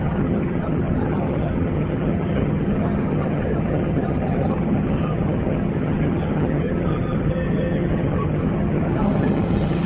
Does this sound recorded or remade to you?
remade